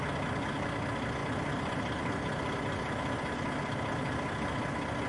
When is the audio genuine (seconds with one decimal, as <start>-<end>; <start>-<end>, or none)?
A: 0.0-5.1